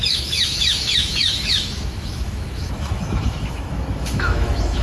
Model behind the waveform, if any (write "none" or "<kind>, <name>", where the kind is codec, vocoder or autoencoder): autoencoder, DAC-VAE